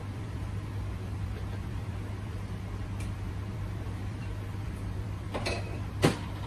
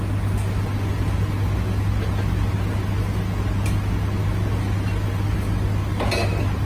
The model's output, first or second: first